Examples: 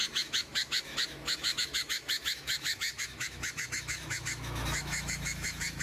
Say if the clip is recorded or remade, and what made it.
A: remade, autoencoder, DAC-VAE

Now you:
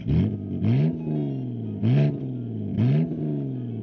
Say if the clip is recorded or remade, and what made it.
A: recorded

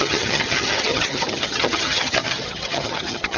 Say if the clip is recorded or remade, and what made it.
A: remade, vocoder, HiFi-GAN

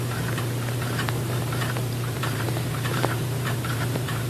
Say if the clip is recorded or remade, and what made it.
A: remade, vocoder, BigVGAN v2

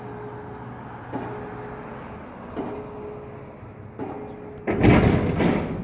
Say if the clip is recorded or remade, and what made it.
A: recorded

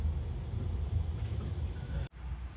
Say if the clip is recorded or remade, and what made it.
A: recorded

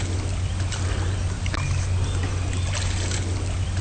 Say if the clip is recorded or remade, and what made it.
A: recorded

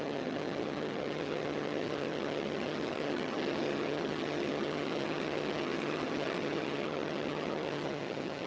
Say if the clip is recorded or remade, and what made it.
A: remade, vocoder, HiFi-GAN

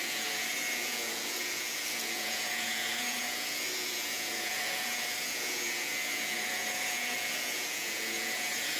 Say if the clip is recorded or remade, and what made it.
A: remade, vocoder, Vocos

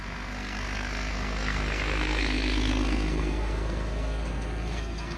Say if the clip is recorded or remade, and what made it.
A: remade, codec, SNAC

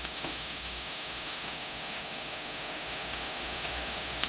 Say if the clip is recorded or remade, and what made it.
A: remade, autoencoder, DAC-VAE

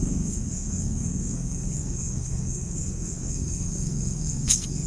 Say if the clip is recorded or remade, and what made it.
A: remade, codec, SNAC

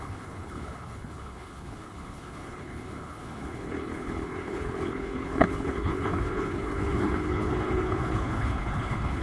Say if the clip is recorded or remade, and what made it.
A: remade, codec, HILCodec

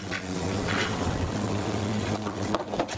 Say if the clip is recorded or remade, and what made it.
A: remade, vocoder, WaveNeXt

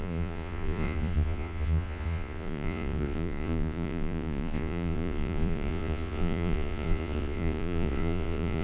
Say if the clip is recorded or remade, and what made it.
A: remade, vocoder, Vocos